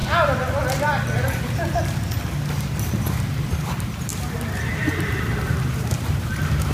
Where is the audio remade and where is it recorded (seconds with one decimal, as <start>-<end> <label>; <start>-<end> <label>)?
0.0-2.5 recorded; 2.5-6.7 remade